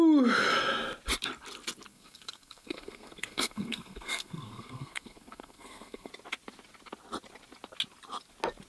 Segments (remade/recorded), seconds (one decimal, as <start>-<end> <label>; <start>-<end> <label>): 0.0-1.9 recorded; 1.9-6.1 remade; 6.1-8.7 recorded